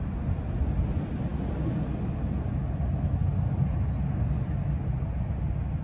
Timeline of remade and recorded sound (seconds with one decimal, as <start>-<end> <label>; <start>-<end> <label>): 0.0-5.8 recorded